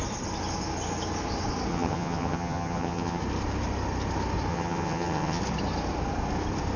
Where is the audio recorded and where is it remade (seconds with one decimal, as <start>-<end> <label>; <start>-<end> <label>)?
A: 0.0-1.7 recorded; 1.7-3.2 remade; 3.2-4.5 recorded; 4.5-5.4 remade; 5.4-6.8 recorded